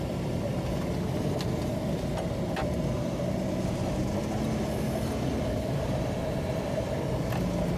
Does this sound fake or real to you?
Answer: real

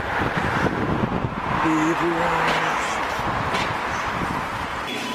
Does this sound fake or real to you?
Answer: real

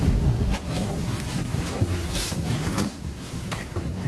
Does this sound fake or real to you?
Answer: fake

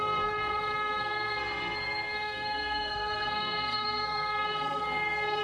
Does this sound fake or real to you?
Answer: fake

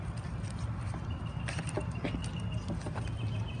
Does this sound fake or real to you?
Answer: real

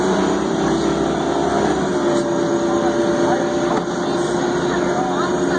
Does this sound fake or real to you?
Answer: real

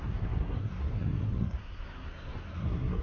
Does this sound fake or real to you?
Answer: fake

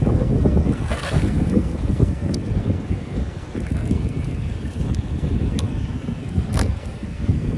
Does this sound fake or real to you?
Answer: fake